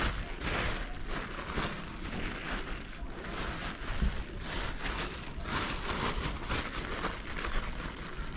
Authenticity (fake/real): real